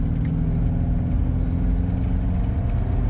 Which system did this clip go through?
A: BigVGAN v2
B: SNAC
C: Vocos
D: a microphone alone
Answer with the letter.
D